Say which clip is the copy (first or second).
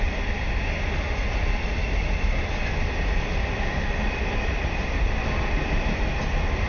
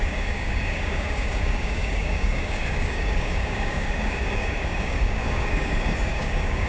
second